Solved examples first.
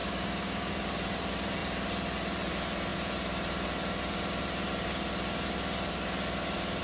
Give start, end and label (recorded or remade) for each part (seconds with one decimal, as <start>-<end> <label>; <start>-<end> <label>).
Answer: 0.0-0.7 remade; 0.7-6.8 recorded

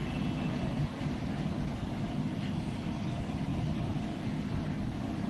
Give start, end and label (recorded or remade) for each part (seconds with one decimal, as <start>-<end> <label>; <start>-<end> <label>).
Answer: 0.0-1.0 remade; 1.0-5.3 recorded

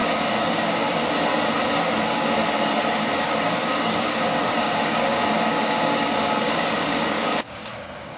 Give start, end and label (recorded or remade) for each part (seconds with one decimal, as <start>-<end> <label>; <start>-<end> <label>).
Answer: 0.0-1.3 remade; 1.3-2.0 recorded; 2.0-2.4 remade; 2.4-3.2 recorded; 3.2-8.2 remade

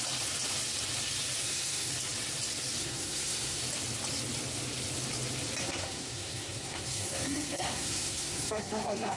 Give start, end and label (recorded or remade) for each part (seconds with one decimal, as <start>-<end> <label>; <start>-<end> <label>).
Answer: 0.0-1.4 recorded; 1.4-1.9 remade; 1.9-2.8 recorded; 2.8-3.6 remade; 3.6-5.6 recorded; 5.6-9.2 remade

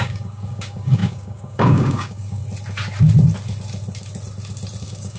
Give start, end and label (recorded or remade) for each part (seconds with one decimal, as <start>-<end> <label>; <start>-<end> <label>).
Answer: 0.0-2.4 remade; 2.4-4.8 recorded; 4.8-5.2 remade